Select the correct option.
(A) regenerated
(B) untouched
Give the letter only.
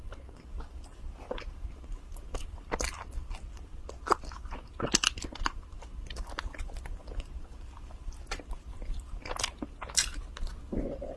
B